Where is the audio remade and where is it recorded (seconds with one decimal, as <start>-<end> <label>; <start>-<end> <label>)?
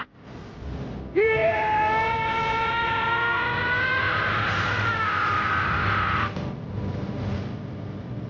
0.0-8.3 recorded